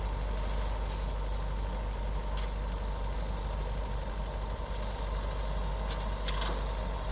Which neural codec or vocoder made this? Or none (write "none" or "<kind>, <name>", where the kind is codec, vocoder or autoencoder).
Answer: none